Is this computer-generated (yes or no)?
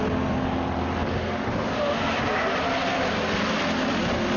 no